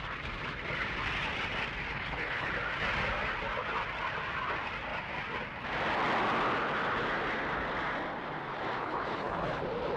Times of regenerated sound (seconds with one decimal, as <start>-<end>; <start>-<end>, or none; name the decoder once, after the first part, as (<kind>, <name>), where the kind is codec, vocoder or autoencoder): 1.9-2.5 (codec, HILCodec); 8.8-9.6